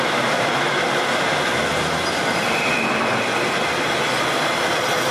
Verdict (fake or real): real